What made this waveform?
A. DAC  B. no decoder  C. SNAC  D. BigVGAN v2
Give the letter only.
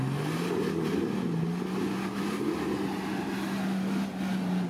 B